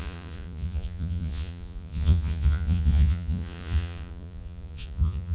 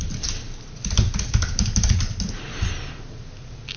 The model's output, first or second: first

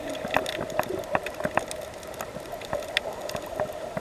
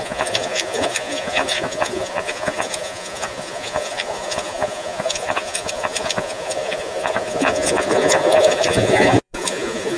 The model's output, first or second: second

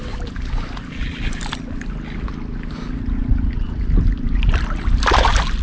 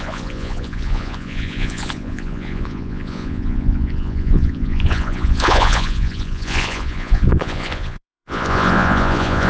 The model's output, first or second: second